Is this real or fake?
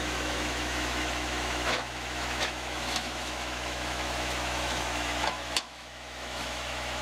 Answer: fake